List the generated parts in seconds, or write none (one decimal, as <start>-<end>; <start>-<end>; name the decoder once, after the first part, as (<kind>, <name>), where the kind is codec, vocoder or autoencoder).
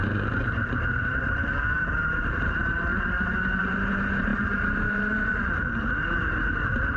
0.0-2.9 (vocoder, BigVGAN v2); 3.6-7.0